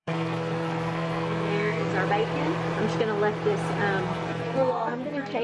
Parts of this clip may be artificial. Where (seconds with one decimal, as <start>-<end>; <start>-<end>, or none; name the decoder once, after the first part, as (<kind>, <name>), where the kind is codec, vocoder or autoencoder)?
0.0-1.9 (codec, SNAC); 4.0-5.4